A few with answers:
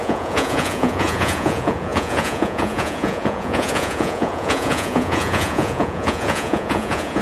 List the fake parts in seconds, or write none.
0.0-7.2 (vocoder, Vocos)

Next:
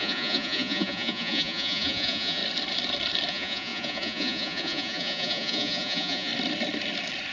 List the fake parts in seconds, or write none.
0.0-2.4 (vocoder, Vocos); 3.3-6.3

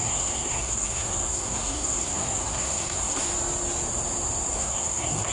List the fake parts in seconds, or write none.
0.0-3.2 (codec, SNAC); 4.5-5.3

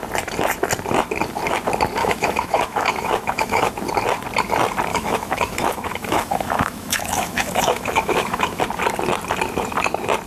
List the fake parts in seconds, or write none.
2.0-3.7 (autoencoder, DAC-VAE); 4.9-8.6

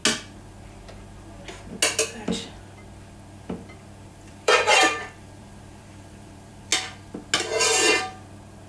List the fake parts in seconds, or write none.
4.1-6.7 (vocoder, BigVGAN v2)

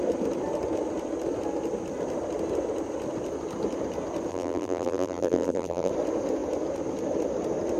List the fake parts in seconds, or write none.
4.3-5.9 (vocoder, BigVGAN v2)